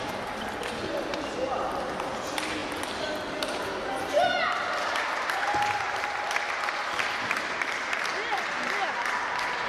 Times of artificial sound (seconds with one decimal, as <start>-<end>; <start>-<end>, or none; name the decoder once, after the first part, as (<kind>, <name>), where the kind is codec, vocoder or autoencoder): none

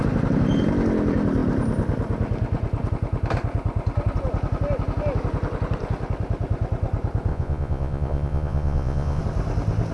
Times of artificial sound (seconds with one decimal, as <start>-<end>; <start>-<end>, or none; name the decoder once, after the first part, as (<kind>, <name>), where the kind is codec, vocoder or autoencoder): 7.3-9.2 (vocoder, Vocos)

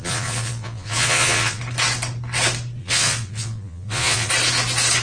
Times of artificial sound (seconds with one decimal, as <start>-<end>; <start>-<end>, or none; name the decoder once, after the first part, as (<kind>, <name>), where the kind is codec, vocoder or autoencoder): 0.0-1.6 (vocoder, Vocos); 2.8-4.3

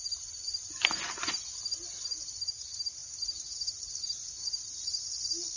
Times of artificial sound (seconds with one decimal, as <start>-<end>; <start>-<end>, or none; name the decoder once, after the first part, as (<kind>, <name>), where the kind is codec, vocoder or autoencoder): none